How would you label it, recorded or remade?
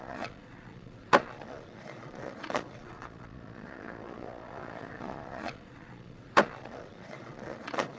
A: remade